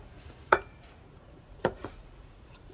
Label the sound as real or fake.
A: fake